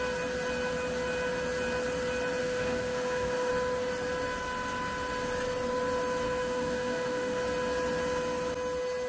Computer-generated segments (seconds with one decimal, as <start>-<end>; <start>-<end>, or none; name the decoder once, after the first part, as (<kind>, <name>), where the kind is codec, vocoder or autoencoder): 2.4-3.5 (autoencoder, DAC-VAE); 6.4-7.4